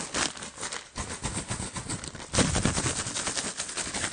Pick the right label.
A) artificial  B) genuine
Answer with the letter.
B